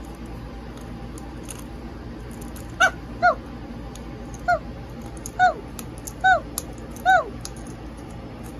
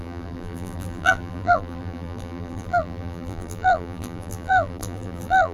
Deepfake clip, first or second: second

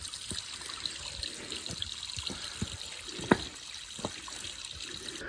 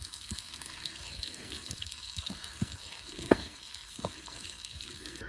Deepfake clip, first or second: second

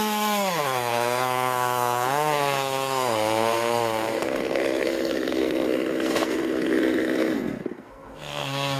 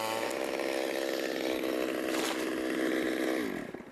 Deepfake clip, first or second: first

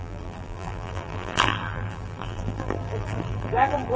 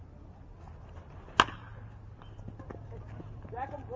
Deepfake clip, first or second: first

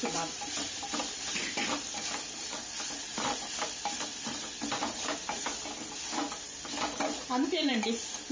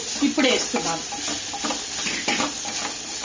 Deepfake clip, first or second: first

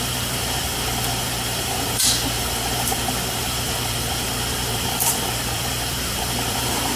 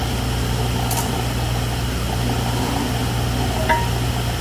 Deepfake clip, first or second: first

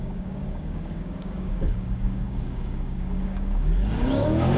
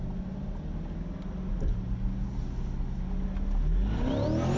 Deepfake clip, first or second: first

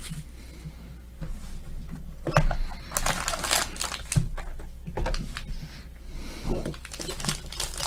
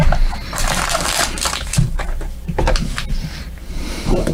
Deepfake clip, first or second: second